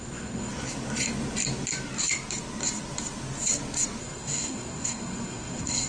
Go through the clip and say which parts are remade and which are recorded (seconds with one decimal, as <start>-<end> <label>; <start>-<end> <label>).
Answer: 0.0-0.5 remade; 0.5-4.0 recorded; 4.0-5.9 remade